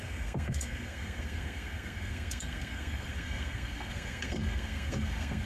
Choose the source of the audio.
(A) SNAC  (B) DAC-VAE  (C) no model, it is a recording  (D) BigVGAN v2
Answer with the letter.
A